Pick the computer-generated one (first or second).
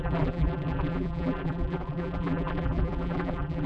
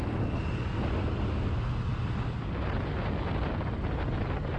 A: first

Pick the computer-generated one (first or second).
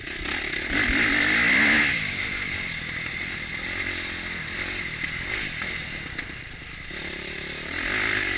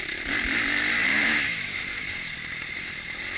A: second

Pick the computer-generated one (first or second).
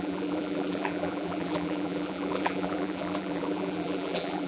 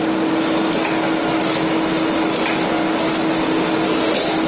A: first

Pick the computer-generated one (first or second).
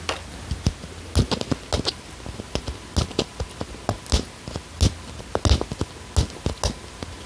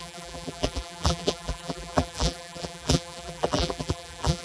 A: second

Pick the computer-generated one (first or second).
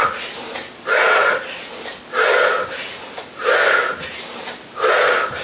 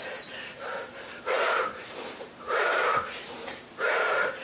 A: second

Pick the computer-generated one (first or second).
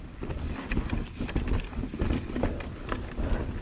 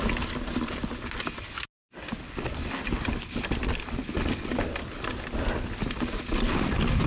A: first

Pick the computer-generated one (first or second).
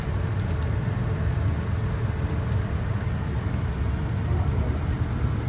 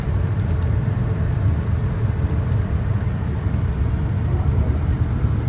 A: second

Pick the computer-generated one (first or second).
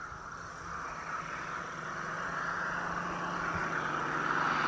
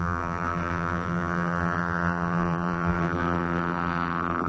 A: second